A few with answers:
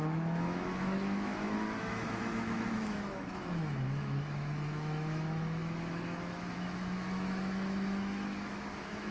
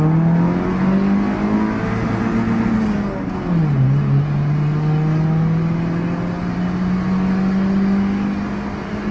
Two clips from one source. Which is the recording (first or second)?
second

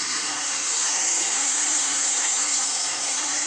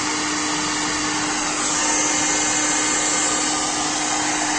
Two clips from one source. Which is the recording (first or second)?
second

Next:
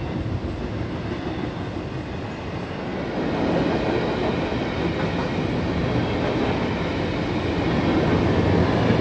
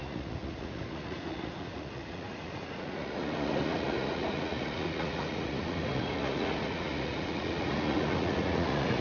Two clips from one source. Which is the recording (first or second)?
first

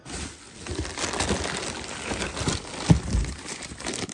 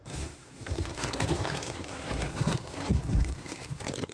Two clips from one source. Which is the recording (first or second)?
first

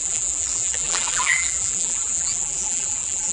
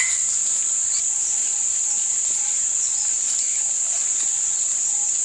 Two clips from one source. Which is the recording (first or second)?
second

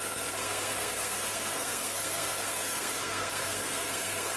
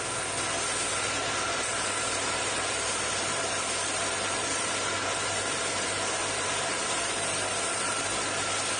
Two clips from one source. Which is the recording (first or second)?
second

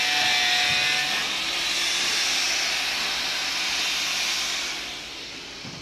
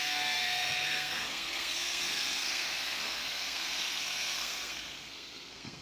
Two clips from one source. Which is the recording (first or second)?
first